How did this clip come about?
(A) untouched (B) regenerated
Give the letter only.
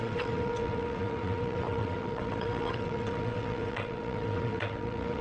B